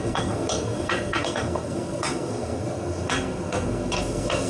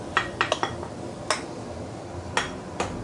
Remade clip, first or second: first